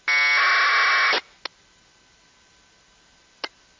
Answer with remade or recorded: recorded